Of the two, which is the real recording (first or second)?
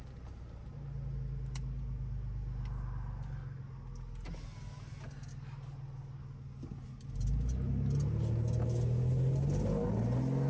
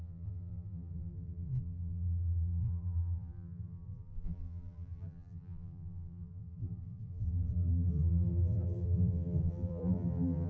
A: first